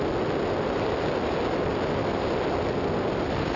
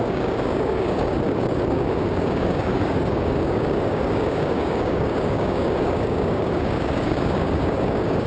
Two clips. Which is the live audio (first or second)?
first